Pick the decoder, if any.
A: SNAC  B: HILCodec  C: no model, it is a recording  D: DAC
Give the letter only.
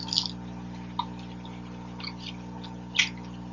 C